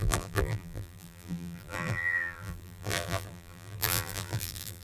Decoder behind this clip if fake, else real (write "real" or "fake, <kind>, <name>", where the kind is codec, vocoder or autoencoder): fake, vocoder, BigVGAN v2